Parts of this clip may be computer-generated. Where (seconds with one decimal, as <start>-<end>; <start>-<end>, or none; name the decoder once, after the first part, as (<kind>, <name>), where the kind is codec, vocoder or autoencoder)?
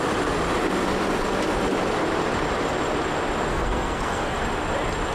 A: 3.5-4.4 (codec, SNAC)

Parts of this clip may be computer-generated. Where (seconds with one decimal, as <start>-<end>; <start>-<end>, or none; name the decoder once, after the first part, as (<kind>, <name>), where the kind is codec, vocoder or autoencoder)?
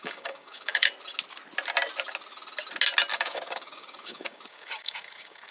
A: 0.0-0.9 (codec, DAC); 3.1-5.5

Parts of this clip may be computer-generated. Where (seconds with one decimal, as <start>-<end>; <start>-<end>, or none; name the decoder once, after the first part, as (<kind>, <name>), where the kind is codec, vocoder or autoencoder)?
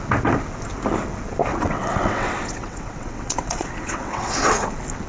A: 1.5-4.3 (vocoder, WaveNeXt)